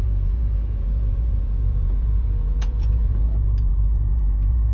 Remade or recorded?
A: remade